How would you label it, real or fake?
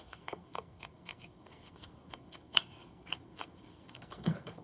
fake